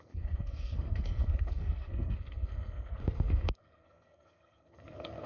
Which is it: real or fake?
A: fake